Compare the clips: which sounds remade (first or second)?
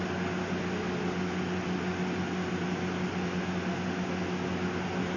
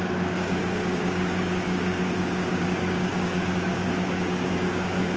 second